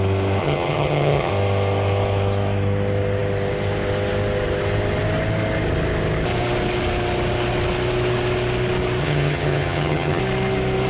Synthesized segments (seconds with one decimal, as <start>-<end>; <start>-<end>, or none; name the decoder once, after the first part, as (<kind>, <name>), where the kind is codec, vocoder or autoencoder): 0.4-1.3 (vocoder, HiFi-GAN); 9.0-10.2